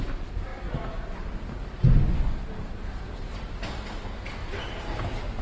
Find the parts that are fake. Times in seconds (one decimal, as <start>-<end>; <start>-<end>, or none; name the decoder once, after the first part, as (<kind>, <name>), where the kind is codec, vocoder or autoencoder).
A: none